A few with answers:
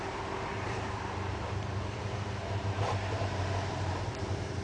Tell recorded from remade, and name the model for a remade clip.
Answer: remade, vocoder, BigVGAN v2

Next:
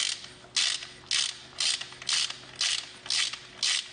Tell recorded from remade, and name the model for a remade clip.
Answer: recorded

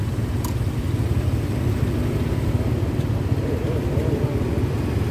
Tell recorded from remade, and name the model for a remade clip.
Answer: recorded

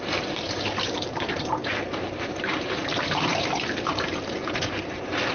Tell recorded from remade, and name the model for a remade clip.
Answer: remade, vocoder, BigVGAN v2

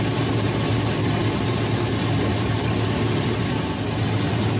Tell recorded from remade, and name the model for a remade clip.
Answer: recorded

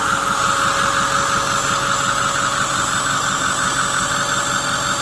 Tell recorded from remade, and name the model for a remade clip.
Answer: recorded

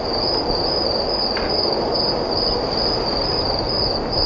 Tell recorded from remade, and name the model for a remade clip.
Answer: recorded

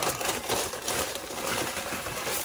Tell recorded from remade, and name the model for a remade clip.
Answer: remade, vocoder, BigVGAN v2